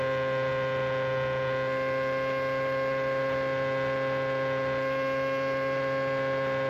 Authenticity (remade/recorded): recorded